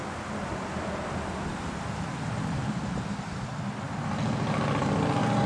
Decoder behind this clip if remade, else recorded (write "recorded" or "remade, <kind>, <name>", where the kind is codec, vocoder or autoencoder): recorded